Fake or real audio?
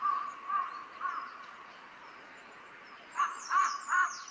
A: fake